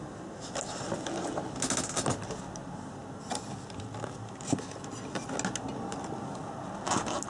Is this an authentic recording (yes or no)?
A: yes